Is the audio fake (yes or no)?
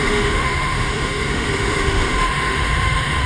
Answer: yes